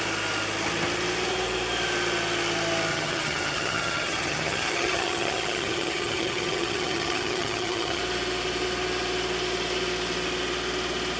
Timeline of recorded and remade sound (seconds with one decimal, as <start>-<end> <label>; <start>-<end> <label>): 0.0-2.9 recorded; 2.9-8.0 remade; 8.0-11.2 recorded